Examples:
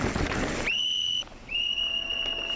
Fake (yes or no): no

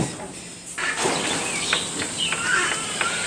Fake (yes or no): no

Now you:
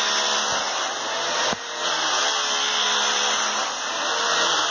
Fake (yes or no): no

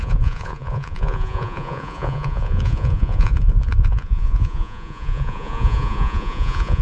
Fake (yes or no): yes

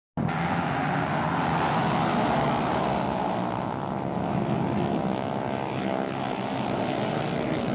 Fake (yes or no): no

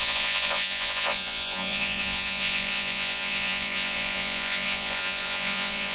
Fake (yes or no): yes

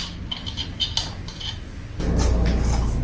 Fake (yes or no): no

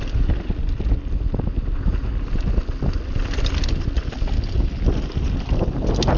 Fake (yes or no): no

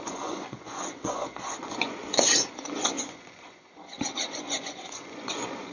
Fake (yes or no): yes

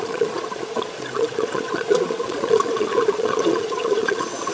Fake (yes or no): yes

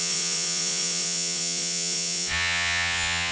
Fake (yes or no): yes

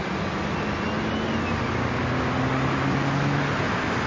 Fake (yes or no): no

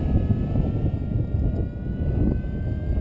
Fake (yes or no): no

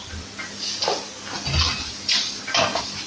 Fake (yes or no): no